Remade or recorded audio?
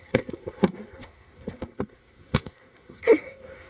remade